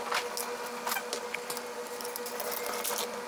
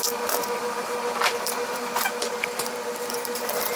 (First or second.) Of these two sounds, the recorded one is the first